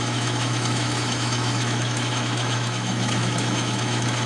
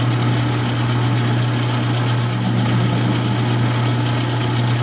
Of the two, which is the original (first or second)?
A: second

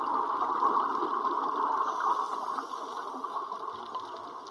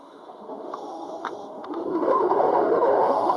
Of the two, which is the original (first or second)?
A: first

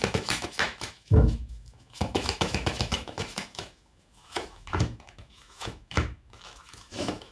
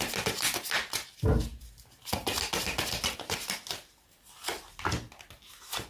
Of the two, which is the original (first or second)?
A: second